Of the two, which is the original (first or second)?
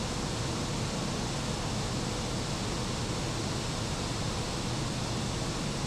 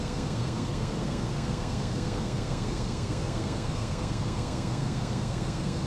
first